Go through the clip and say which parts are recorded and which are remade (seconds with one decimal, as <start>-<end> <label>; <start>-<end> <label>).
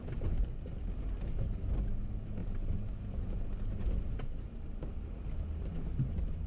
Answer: 0.0-2.4 recorded; 2.4-2.9 remade; 2.9-6.5 recorded